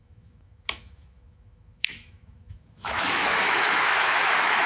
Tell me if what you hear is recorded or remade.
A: remade